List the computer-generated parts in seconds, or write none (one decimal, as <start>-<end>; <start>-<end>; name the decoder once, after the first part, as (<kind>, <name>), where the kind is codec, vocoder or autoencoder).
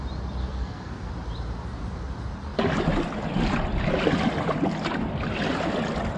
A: 0.4-1.1 (codec, SNAC)